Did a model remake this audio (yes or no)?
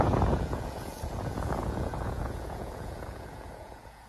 yes